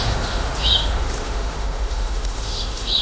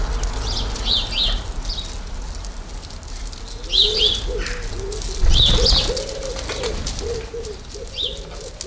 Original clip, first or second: second